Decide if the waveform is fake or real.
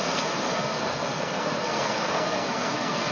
fake